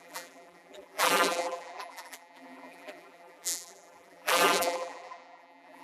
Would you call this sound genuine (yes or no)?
no